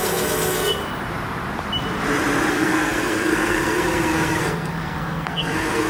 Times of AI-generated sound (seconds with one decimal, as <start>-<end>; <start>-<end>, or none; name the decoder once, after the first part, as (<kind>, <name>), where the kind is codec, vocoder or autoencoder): 0.0-0.8 (codec, SNAC); 2.5-5.9